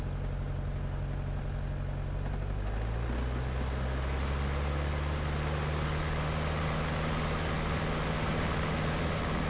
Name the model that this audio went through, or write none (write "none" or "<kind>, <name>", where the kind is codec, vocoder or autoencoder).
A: none